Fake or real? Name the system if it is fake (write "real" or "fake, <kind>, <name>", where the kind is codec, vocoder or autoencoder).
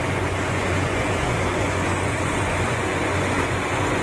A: fake, vocoder, Vocos